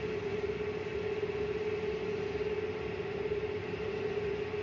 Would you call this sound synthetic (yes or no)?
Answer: no